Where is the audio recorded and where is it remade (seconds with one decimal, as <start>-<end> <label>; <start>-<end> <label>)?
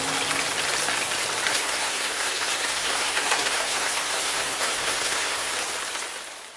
0.0-1.5 recorded; 1.5-5.5 remade; 5.5-6.6 recorded